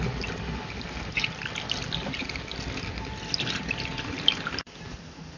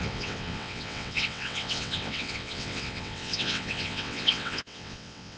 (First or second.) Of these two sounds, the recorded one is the first